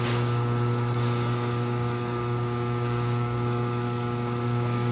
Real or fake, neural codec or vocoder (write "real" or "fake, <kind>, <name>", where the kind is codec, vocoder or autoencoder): fake, codec, DAC